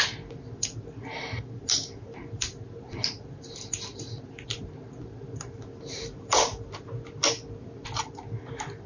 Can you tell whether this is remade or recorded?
recorded